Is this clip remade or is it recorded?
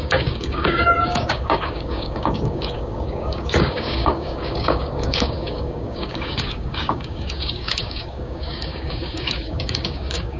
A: remade